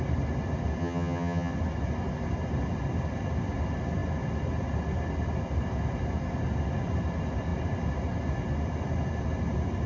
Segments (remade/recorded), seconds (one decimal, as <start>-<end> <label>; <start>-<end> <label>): 0.0-0.8 recorded; 0.8-1.5 remade; 1.5-9.9 recorded